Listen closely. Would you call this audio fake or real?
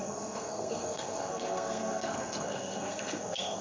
fake